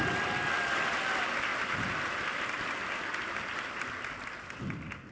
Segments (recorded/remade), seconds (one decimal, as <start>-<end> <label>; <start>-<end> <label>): 0.0-5.1 recorded